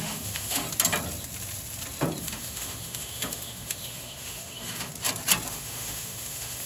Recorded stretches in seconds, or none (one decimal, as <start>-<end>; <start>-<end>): 0.6-2.2; 4.9-5.5